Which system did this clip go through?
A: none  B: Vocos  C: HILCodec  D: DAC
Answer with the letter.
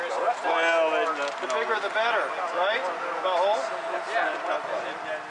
A